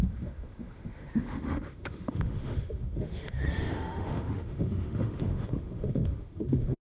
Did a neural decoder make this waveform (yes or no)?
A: yes